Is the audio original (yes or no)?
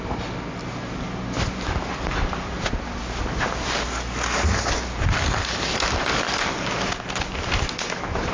yes